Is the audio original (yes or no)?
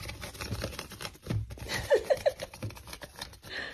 yes